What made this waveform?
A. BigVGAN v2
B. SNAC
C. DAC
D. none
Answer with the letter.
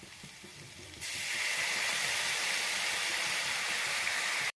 A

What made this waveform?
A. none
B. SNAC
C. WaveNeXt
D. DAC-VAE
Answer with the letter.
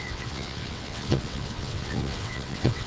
C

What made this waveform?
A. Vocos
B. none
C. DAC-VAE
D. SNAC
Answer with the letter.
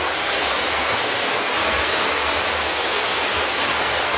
D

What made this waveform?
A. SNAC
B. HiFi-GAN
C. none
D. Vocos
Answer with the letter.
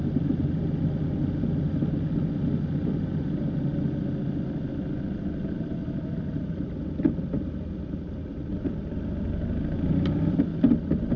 C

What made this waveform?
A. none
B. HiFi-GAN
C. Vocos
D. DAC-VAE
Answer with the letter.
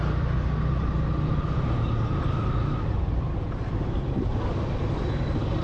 A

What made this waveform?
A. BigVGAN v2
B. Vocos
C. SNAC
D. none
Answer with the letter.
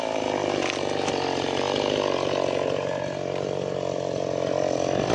A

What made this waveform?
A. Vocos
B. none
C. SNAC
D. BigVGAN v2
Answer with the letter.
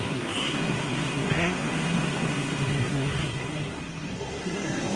C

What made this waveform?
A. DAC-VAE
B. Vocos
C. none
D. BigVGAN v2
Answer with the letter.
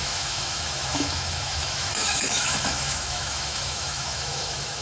A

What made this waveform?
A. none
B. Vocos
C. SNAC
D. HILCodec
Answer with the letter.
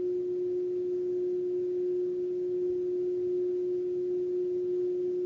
A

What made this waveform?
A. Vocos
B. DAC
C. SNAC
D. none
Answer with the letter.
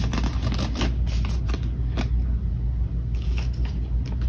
D